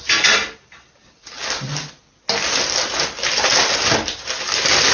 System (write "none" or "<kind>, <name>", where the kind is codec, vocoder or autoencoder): none